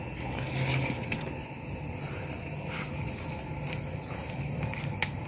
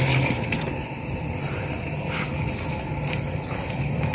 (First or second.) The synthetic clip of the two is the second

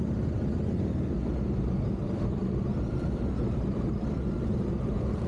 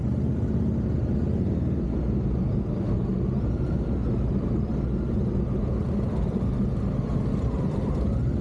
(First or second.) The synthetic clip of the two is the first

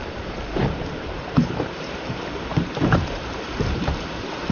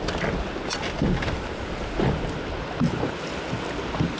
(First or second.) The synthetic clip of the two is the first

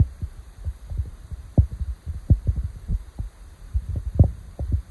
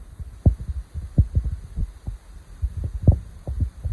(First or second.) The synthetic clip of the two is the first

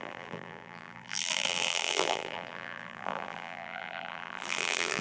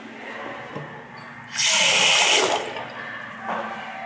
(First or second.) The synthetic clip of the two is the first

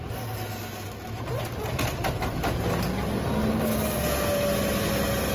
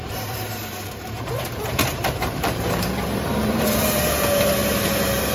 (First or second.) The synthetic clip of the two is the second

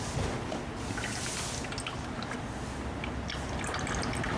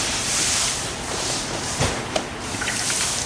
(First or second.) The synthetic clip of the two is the second